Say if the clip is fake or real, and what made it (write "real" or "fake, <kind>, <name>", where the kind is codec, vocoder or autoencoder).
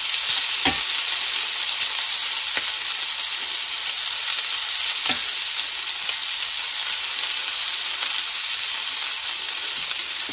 real